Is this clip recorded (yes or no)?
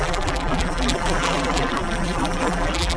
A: no